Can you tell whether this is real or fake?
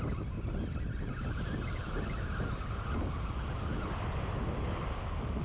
real